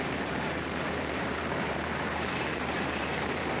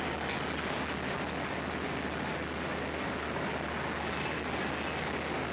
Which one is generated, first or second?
first